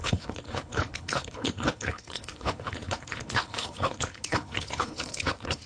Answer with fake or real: fake